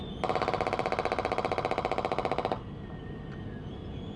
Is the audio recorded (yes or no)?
yes